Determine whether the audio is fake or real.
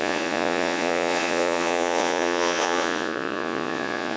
fake